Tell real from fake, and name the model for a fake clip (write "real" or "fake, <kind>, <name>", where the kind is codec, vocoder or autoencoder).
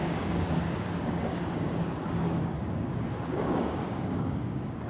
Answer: fake, codec, DAC